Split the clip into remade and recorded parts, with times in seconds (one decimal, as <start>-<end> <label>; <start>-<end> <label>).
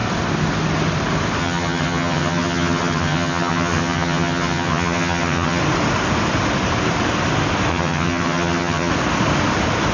0.0-1.4 recorded; 1.4-5.6 remade; 5.6-7.7 recorded; 7.7-8.9 remade; 8.9-9.9 recorded